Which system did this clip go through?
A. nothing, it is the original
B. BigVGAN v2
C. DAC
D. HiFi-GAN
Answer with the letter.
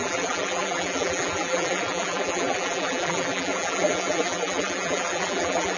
B